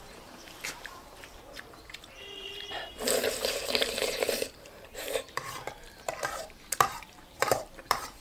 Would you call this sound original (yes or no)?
no